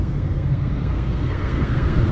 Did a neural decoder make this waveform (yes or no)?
yes